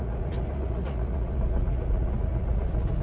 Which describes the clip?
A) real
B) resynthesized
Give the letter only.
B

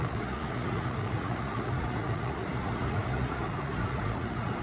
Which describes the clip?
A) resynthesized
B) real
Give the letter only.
A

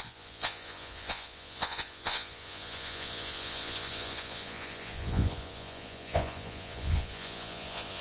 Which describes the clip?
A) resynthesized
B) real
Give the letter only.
A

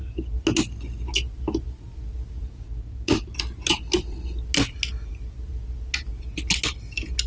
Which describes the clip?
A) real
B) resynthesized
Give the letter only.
A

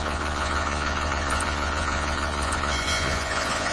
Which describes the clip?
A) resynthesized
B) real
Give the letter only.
A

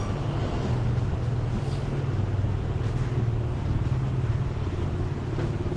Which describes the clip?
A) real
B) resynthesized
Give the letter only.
A